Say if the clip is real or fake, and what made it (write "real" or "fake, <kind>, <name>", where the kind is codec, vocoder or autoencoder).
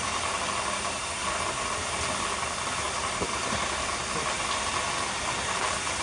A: real